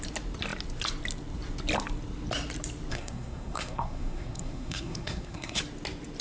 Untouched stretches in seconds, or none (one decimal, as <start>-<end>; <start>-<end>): 0.0-2.9; 5.6-6.2